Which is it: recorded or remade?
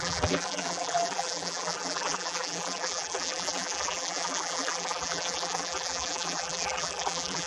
remade